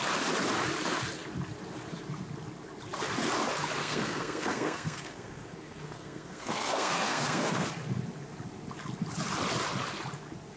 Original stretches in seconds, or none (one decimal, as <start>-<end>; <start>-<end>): 0.0-3.8; 7.7-10.6